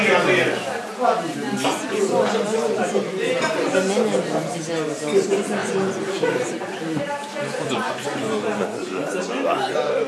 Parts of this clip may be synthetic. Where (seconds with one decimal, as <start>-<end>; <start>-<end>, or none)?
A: 5.6-7.9